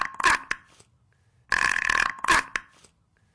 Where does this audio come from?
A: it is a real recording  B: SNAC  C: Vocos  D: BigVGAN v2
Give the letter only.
A